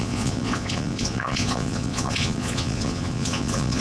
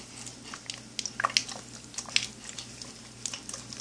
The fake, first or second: first